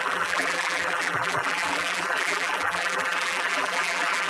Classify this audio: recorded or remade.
remade